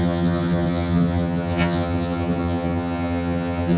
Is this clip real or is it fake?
fake